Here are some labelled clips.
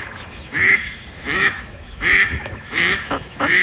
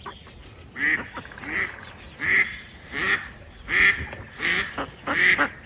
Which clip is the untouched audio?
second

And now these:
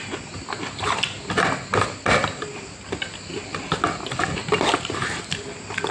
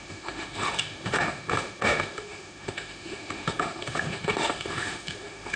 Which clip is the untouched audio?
first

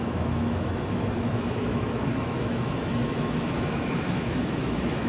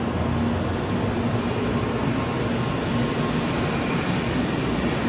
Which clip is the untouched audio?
second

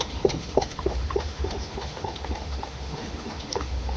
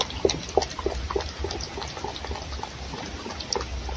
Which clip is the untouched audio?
second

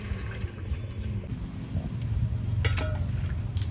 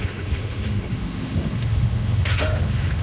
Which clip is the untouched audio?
first